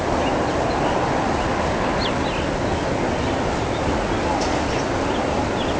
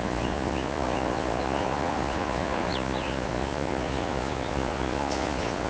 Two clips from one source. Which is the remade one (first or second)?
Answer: second